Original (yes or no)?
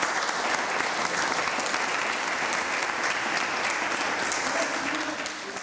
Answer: yes